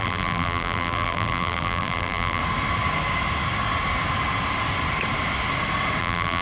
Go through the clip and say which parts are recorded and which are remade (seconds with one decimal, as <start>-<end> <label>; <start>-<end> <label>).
0.0-2.4 remade; 2.4-6.0 recorded; 6.0-6.4 remade

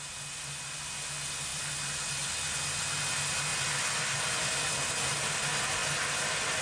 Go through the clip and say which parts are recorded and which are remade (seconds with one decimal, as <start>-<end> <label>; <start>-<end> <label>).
0.0-6.6 recorded